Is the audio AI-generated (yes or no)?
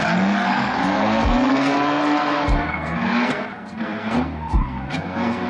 yes